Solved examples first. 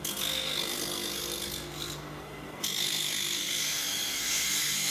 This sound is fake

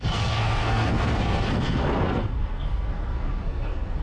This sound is fake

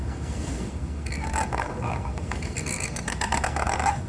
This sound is fake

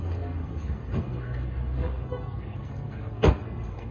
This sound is fake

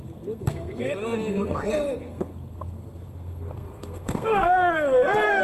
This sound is fake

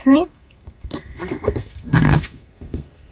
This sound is fake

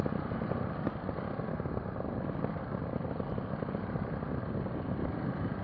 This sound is real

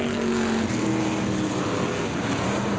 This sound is real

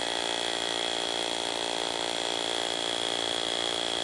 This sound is real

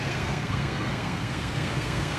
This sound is fake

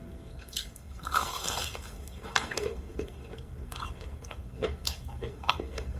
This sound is fake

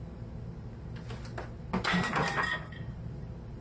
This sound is real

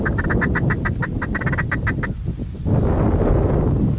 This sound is real